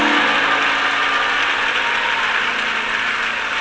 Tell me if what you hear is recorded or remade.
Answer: recorded